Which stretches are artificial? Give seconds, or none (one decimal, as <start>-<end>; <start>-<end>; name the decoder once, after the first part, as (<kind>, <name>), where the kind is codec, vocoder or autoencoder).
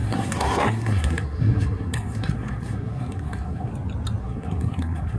0.0-3.7 (codec, SNAC); 4.2-5.2